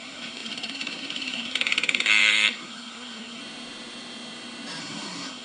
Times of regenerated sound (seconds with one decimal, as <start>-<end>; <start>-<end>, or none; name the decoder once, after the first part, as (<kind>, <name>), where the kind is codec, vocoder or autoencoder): 0.0-3.4 (codec, SNAC); 4.8-5.4